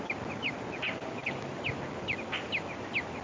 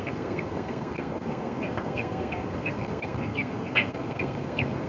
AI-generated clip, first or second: second